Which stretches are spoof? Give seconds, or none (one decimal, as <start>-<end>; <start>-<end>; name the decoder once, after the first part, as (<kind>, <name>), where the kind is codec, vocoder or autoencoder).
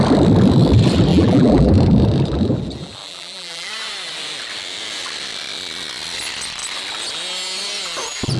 1.1-1.7 (vocoder, BigVGAN v2); 3.0-3.7